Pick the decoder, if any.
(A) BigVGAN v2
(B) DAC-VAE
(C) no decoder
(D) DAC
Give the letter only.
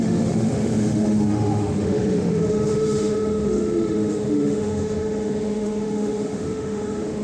B